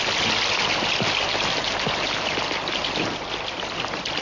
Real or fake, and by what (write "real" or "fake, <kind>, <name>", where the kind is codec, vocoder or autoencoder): real